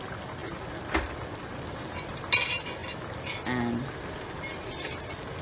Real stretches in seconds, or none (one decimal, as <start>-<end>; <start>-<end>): 0.0-5.4